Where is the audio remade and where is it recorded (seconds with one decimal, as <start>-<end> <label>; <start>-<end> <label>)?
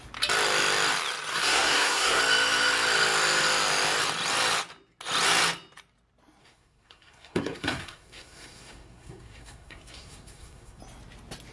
0.0-1.3 recorded; 1.3-2.2 remade; 2.2-6.4 recorded; 6.4-10.8 remade; 10.8-11.5 recorded